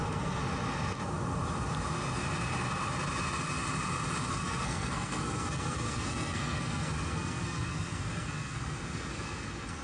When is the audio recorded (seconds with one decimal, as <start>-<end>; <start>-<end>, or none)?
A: 0.4-4.3